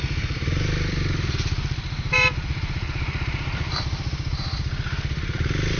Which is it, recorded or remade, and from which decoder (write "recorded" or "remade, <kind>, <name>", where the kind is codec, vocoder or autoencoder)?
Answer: remade, vocoder, BigVGAN v2